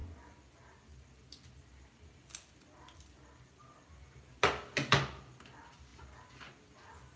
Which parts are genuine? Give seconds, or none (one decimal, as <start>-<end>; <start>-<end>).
0.0-7.2